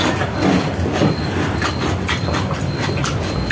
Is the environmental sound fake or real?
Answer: real